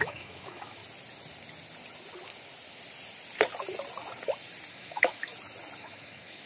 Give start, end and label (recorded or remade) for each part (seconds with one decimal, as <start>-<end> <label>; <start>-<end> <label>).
0.0-0.8 remade; 0.8-4.7 recorded; 4.7-5.3 remade; 5.3-5.8 recorded; 5.8-6.5 remade

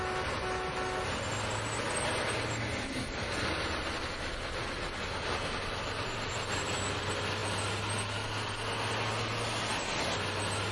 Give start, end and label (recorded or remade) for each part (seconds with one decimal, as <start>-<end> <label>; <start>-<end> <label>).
0.0-10.7 recorded